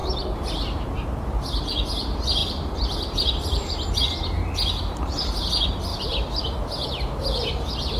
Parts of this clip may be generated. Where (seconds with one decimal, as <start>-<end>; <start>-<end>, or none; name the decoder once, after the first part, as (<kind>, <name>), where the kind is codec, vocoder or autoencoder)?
0.0-0.8 (vocoder, BigVGAN v2); 2.4-4.0; 5.9-6.6